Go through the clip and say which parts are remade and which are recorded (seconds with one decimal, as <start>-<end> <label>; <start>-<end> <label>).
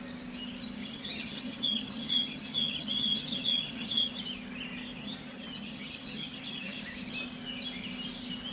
0.0-0.8 recorded; 0.8-4.1 remade; 4.1-5.0 recorded; 5.0-6.8 remade; 6.8-8.5 recorded